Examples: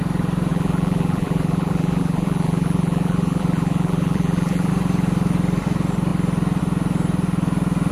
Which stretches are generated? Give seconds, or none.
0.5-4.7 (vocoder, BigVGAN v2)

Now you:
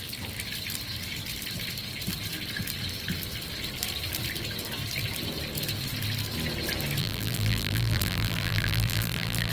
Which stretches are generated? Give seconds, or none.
7.0-9.5 (vocoder, BigVGAN v2)

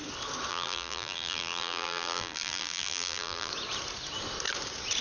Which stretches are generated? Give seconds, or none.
0.5-3.5 (vocoder, BigVGAN v2)

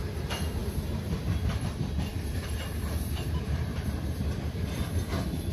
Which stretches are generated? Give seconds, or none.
0.6-3.9 (vocoder, BigVGAN v2)

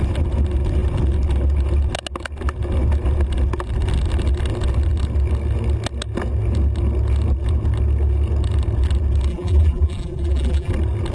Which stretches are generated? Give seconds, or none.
9.3-10.7 (vocoder, BigVGAN v2)

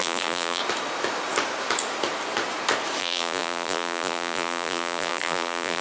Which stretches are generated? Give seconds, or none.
0.0-0.6 (vocoder, BigVGAN v2); 3.0-5.8

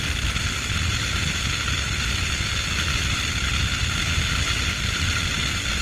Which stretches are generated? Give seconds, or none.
0.0-1.2 (vocoder, BigVGAN v2); 4.7-5.8